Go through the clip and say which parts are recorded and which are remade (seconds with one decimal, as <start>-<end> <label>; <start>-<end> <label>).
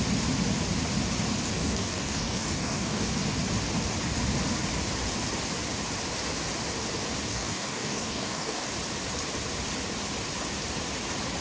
0.0-1.5 recorded; 1.5-3.1 remade; 3.1-7.3 recorded; 7.3-8.7 remade; 8.7-11.4 recorded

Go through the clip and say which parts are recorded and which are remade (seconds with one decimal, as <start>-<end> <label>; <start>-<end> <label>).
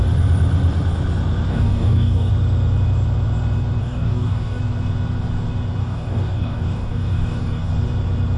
0.0-1.5 recorded; 1.5-2.3 remade; 2.3-3.8 recorded; 3.8-4.6 remade; 4.6-5.8 recorded; 5.8-7.7 remade; 7.7-8.4 recorded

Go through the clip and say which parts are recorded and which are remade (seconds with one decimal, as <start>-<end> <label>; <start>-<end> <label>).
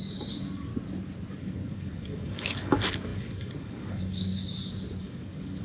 0.0-0.7 remade; 0.7-1.3 recorded; 1.3-4.5 remade; 4.5-5.0 recorded; 5.0-5.6 remade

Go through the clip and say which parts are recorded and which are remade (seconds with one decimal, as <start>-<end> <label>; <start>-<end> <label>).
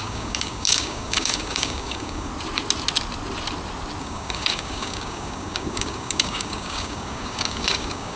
0.0-2.3 remade; 2.3-4.0 recorded; 4.0-8.2 remade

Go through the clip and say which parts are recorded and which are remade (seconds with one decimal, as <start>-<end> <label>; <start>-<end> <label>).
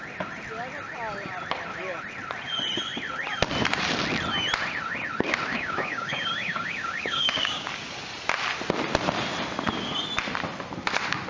0.0-5.5 recorded; 5.5-7.7 remade; 7.7-11.3 recorded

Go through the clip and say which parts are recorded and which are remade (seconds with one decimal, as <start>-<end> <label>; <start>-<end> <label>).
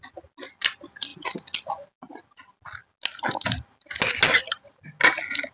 0.0-5.5 recorded